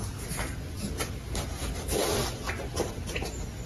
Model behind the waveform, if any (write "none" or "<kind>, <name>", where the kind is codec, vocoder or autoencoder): none